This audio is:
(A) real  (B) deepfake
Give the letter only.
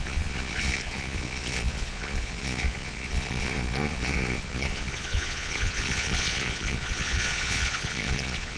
B